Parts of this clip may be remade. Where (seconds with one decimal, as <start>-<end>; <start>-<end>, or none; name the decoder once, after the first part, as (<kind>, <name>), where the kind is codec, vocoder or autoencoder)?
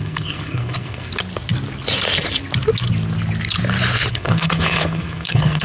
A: 0.0-1.1 (codec, SNAC); 4.1-5.6